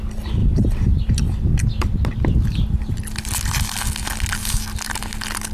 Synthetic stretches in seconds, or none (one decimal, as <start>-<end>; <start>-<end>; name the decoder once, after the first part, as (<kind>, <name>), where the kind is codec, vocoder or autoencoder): 0.4-1.2 (vocoder, BigVGAN v2)